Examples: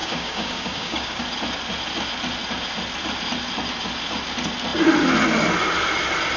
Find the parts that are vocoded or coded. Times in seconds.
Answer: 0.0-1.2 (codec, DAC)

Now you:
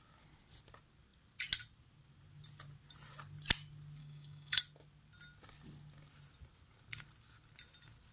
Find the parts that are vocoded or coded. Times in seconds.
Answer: 4.0-4.6 (codec, DAC)

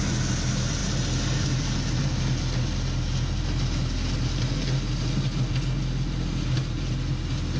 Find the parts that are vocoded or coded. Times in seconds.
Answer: none

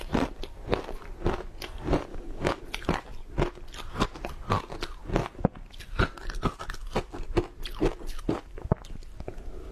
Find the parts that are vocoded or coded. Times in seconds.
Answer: 2.1-2.6 (codec, DAC)

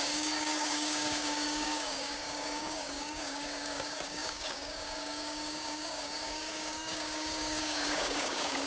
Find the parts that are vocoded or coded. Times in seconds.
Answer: 0.0-8.7 (codec, DAC)

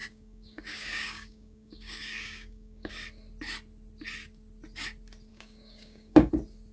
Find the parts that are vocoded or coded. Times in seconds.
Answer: 0.0-2.9 (codec, DAC); 5.3-6.3

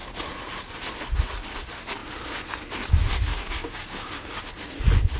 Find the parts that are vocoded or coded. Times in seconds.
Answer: 3.3-4.5 (codec, DAC)

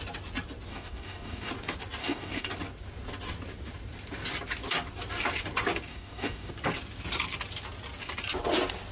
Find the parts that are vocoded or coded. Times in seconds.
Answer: 0.7-1.5 (codec, DAC); 2.0-2.5; 5.9-6.5